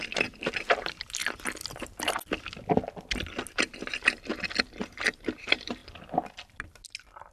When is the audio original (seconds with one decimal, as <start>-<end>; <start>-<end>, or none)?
1.2-3.5; 4.3-4.8; 5.8-7.3